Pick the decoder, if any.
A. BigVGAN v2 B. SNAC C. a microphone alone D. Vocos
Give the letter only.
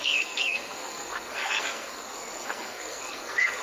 B